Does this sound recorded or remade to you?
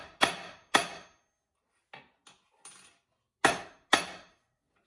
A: recorded